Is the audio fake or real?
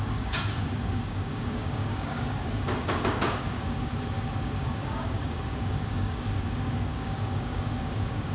fake